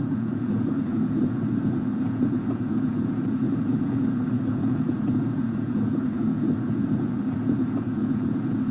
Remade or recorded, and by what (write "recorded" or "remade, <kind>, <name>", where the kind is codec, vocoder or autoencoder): remade, vocoder, Vocos